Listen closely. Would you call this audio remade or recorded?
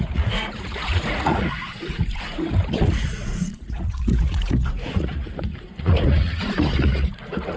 remade